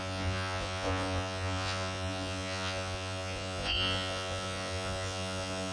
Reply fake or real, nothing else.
fake